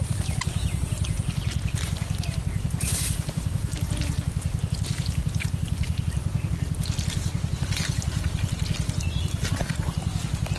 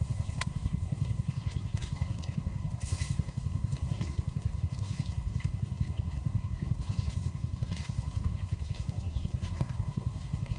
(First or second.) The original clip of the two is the first